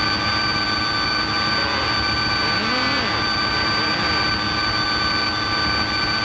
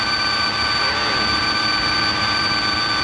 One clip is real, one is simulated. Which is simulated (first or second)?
second